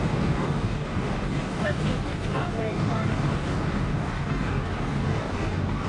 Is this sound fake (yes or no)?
yes